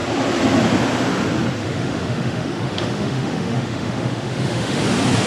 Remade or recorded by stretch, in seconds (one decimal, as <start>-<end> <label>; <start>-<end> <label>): 0.0-1.6 recorded; 1.6-4.8 remade; 4.8-5.3 recorded